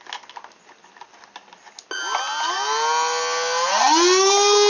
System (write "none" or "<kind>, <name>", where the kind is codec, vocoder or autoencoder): none